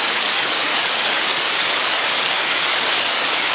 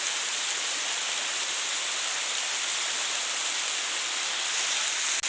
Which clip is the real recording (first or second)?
second